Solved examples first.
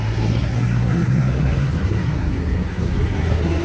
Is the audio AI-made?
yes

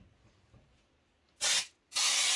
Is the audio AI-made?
no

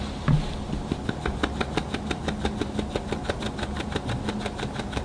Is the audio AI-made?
no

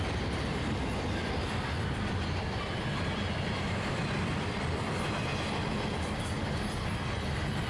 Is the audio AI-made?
no